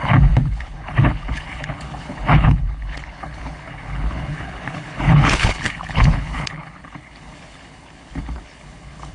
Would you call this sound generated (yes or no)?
yes